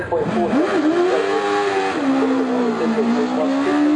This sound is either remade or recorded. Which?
recorded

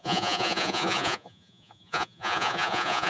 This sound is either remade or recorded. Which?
remade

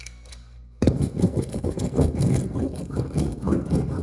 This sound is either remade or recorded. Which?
remade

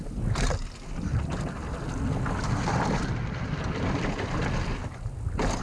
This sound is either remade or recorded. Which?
recorded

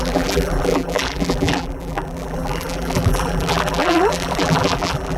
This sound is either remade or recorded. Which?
remade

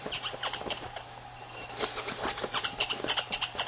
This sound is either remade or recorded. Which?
remade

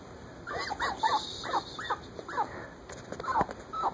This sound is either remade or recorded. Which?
recorded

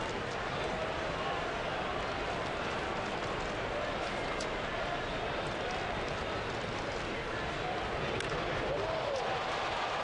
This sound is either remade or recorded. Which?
recorded